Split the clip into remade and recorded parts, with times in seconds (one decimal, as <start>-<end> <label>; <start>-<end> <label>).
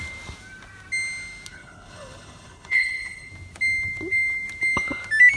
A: 0.0-1.5 recorded; 1.5-3.3 remade; 3.3-5.4 recorded